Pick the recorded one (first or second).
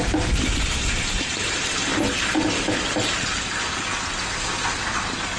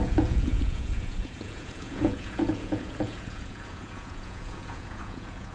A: first